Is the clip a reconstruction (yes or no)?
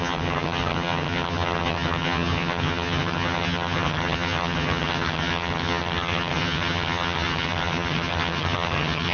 yes